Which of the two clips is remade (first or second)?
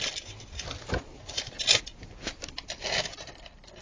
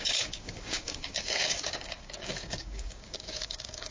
second